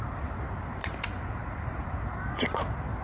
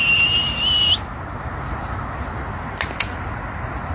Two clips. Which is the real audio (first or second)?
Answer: second